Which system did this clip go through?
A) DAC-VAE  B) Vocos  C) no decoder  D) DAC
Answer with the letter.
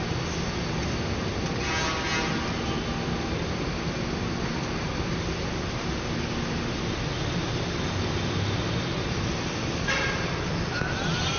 C